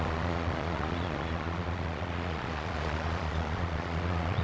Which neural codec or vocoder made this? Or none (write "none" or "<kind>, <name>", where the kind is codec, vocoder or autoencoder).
vocoder, Vocos